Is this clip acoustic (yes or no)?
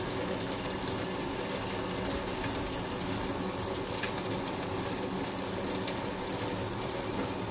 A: yes